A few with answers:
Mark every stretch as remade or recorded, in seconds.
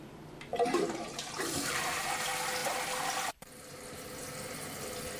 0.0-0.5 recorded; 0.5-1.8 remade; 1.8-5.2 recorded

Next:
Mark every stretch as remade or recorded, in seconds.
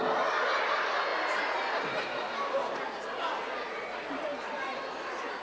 0.0-5.4 recorded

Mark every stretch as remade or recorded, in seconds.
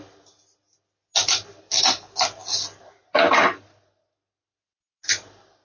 0.0-5.6 recorded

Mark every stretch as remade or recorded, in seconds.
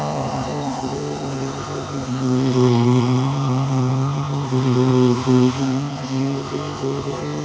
0.0-7.4 remade